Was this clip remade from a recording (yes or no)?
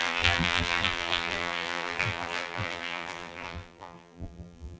yes